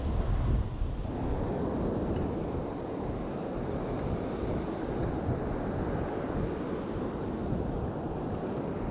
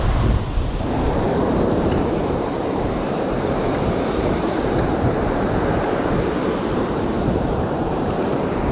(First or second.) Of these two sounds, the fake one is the second